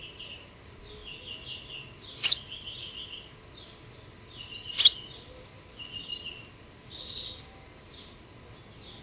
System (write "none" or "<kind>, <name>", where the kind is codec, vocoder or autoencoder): none